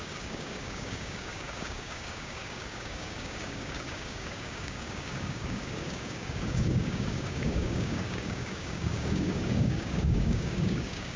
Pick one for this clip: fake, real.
fake